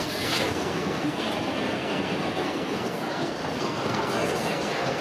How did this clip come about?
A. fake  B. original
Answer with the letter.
A